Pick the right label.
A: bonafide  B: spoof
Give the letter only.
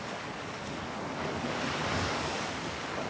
B